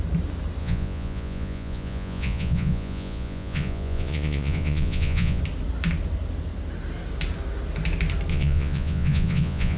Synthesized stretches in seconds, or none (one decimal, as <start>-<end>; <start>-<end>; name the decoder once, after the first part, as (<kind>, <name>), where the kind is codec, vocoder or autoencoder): 0.6-5.4 (vocoder, Vocos); 8.3-9.8